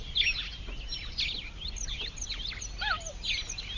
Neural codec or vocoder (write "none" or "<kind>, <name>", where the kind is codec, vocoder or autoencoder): none